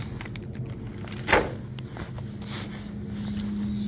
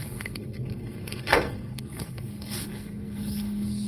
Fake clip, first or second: second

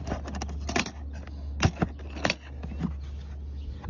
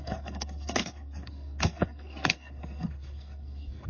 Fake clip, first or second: second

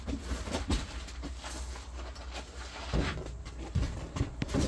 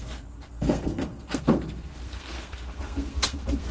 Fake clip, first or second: second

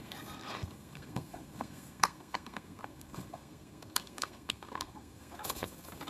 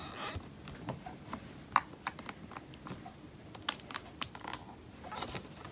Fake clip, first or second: first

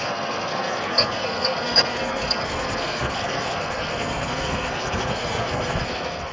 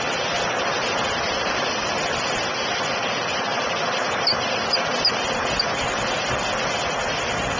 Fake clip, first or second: first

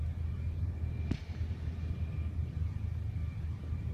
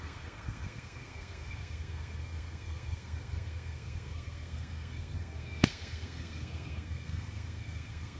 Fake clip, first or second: second